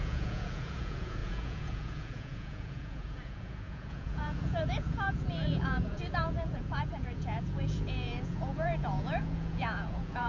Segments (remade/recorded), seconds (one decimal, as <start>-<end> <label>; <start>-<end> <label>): 0.0-10.3 remade